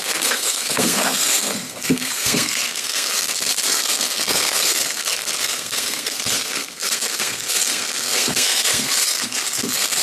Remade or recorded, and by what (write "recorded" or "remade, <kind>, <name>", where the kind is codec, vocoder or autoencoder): remade, codec, SNAC